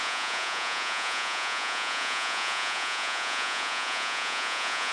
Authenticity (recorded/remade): remade